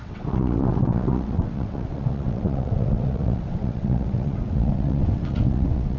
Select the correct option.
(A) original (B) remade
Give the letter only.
B